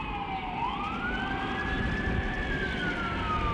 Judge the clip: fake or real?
real